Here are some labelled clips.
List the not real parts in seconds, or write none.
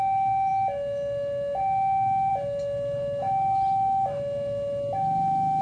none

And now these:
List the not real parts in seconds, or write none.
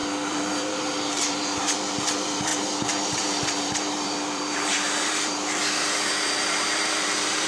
0.0-7.5 (vocoder, BigVGAN v2)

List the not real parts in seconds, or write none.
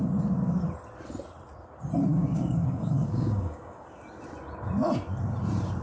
2.1-4.0 (codec, DAC)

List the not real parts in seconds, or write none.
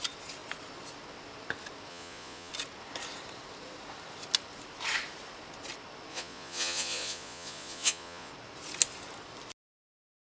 1.9-2.5 (vocoder, Vocos); 6.1-8.3